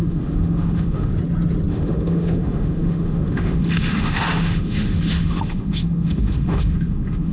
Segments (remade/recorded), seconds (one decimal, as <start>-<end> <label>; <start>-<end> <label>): 0.0-1.1 remade; 1.1-1.7 recorded; 1.7-7.3 remade